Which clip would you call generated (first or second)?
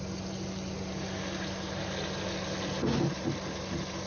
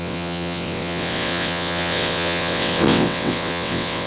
second